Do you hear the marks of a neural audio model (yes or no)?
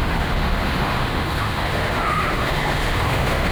yes